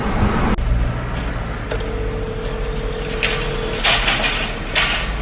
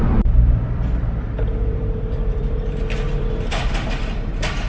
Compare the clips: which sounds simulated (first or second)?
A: second